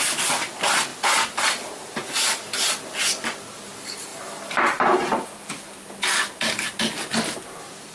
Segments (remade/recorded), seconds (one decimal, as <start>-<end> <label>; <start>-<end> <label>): 0.0-7.9 recorded